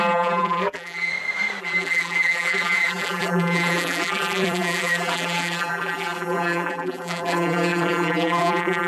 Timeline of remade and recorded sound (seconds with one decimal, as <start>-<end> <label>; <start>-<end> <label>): 0.0-1.1 remade; 1.1-1.6 recorded; 1.6-8.9 remade